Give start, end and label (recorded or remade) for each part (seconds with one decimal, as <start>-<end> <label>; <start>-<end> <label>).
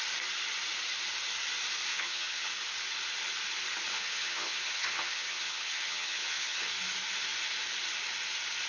0.0-1.9 recorded; 1.9-2.5 remade; 2.5-3.9 recorded; 3.9-6.7 remade; 6.7-8.7 recorded